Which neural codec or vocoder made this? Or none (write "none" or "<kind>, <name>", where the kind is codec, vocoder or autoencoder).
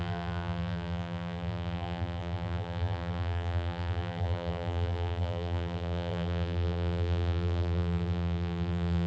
vocoder, BigVGAN v2